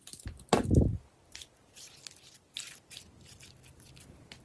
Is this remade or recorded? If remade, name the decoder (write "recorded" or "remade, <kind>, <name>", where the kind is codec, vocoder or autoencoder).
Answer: recorded